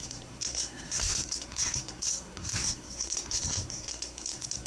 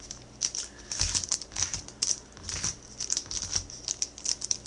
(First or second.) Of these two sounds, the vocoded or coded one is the first